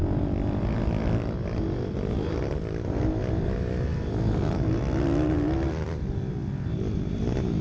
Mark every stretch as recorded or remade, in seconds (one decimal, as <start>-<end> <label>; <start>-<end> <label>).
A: 0.0-7.6 recorded